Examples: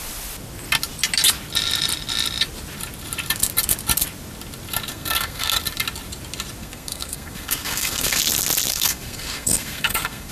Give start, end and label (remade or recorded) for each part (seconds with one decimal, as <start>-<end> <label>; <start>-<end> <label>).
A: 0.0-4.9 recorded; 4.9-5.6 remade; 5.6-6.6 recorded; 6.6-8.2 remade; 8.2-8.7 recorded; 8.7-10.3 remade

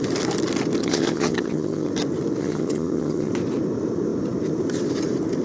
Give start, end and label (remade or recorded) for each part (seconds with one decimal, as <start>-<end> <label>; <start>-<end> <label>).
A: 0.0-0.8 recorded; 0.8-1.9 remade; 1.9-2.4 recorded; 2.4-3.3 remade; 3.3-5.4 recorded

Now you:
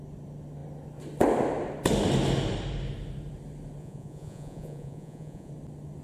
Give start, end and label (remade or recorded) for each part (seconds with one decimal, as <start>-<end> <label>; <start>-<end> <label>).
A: 0.0-3.8 recorded; 3.8-5.5 remade; 5.5-6.0 recorded

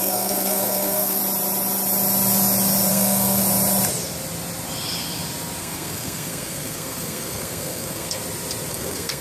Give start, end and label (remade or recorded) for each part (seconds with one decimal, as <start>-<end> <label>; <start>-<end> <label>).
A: 0.0-1.2 remade; 1.2-2.9 recorded; 2.9-3.4 remade; 3.4-5.6 recorded; 5.6-8.2 remade; 8.2-8.7 recorded; 8.7-9.2 remade